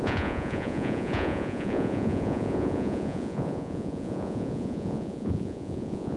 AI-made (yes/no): yes